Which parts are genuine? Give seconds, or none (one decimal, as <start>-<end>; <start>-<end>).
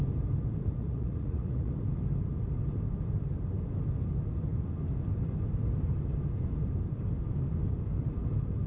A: 0.0-0.8; 1.7-8.7